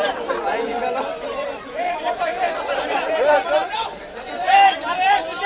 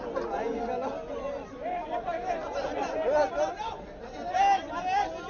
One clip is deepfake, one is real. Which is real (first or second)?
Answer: second